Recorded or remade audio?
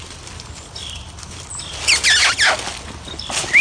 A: recorded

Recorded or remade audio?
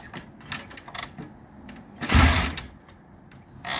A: recorded